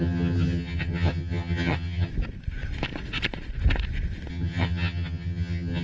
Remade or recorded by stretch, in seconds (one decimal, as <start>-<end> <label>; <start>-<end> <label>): 0.0-2.1 remade; 2.1-4.3 recorded; 4.3-5.8 remade